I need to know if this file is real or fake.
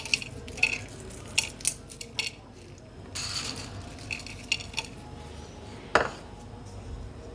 real